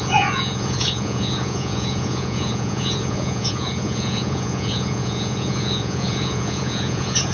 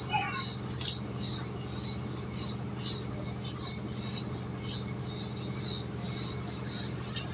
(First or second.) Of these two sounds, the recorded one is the second